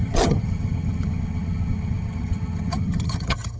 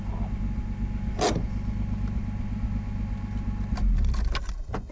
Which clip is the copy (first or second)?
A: first